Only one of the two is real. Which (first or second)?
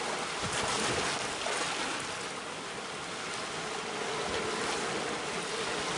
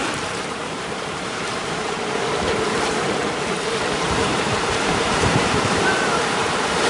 first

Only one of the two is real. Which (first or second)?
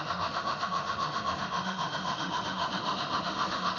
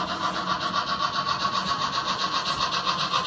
second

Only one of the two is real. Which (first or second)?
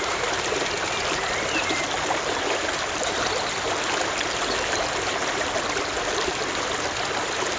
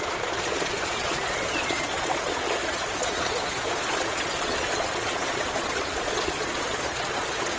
first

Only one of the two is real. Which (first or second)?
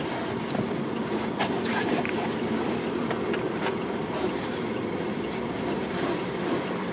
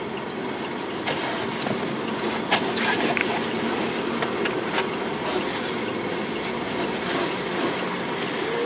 second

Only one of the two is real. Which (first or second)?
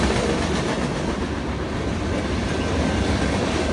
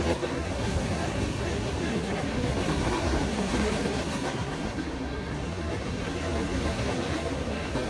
first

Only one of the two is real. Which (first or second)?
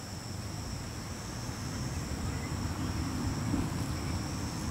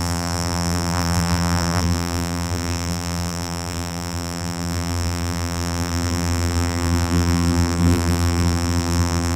first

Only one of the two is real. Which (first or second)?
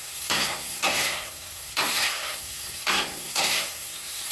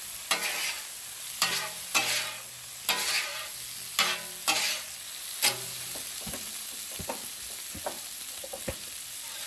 second